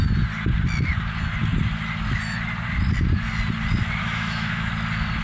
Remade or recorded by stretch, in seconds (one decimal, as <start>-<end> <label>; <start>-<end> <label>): 0.0-4.0 recorded; 4.0-4.7 remade; 4.7-5.2 recorded